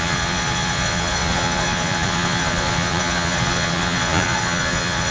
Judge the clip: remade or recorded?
remade